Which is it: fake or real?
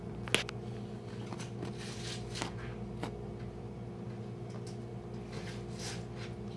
real